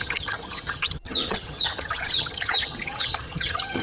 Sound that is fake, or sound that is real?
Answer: fake